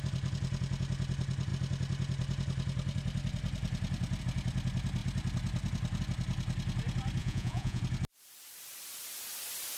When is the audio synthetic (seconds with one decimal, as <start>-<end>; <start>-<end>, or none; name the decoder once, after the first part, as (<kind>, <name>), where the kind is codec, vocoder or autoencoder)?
7.2-7.8 (vocoder, Vocos)